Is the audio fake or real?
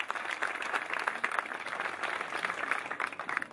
real